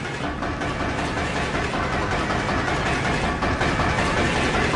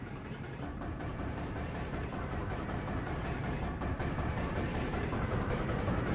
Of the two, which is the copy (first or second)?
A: second